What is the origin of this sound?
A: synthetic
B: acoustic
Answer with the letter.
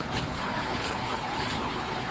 A